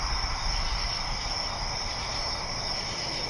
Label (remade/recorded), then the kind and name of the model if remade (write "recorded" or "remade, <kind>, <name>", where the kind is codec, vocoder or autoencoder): recorded